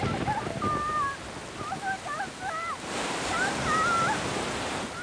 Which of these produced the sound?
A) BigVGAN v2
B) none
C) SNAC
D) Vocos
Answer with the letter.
B